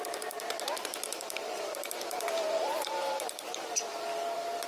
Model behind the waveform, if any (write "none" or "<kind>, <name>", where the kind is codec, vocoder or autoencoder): vocoder, BigVGAN v2